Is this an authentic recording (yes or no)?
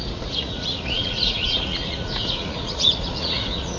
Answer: no